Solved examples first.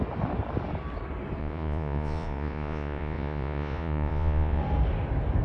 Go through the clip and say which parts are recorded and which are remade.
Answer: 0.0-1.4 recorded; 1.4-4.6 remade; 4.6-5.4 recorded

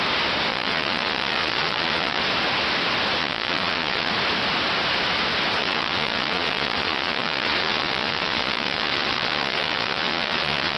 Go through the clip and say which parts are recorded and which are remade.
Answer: 0.0-0.5 recorded; 0.5-2.2 remade; 2.2-3.2 recorded; 3.2-4.1 remade; 4.1-5.6 recorded; 5.6-10.8 remade

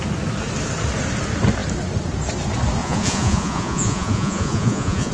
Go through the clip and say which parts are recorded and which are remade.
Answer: 0.0-2.8 recorded; 2.8-5.1 remade

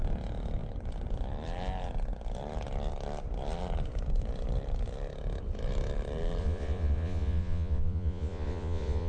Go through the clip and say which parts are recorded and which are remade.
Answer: 0.0-6.4 recorded; 6.4-9.1 remade

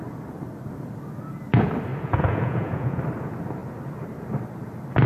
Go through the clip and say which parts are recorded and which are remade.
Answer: 0.0-1.9 recorded; 1.9-3.0 remade; 3.0-5.1 recorded

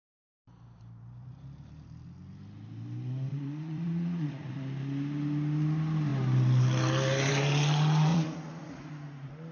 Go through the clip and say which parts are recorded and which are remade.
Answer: 0.0-3.3 recorded; 3.3-4.6 remade; 4.6-8.1 recorded; 8.1-8.9 remade; 8.9-9.5 recorded

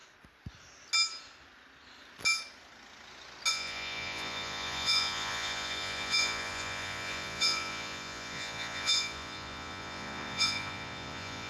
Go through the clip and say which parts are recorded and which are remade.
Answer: 0.0-3.5 recorded; 3.5-11.5 remade

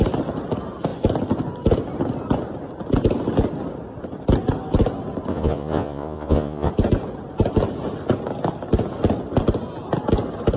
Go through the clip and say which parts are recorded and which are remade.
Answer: 0.0-5.3 recorded; 5.3-6.7 remade; 6.7-10.6 recorded